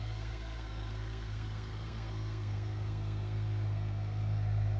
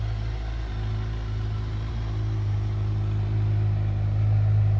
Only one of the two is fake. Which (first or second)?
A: first